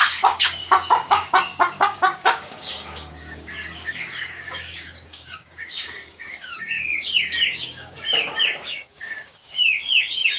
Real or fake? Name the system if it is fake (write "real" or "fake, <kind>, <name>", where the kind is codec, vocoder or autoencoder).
fake, codec, DAC